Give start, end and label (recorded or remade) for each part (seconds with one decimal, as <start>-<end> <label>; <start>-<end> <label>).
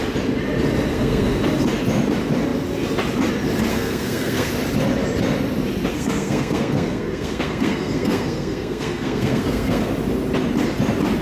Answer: 0.0-0.9 recorded; 0.9-1.4 remade; 1.4-3.7 recorded; 3.7-4.5 remade; 4.5-5.9 recorded; 5.9-9.9 remade; 9.9-11.2 recorded